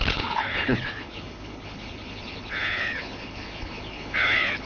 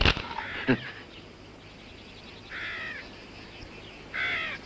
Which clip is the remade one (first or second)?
first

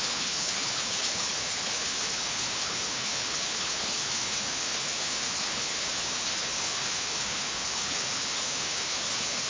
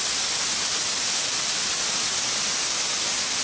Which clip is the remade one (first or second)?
first